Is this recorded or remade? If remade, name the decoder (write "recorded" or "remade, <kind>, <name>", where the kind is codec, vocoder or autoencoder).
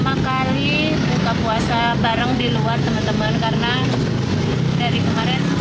recorded